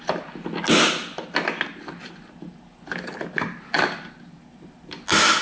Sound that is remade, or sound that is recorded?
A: recorded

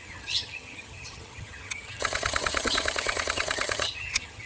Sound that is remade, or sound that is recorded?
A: remade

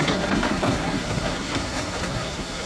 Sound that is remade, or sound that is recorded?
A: remade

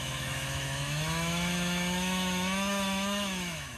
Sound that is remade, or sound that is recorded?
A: remade